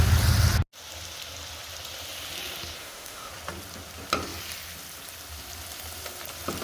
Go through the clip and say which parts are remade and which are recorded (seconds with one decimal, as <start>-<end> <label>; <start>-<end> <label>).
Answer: 0.0-2.8 recorded; 2.8-3.3 remade; 3.3-6.6 recorded